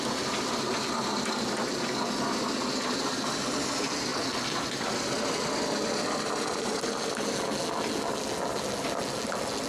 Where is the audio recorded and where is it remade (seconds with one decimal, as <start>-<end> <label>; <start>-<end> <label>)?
0.0-9.7 recorded